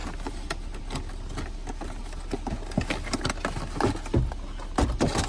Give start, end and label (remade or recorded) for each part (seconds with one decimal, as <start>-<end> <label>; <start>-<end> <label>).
0.0-5.3 recorded